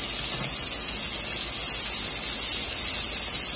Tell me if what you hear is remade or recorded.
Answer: recorded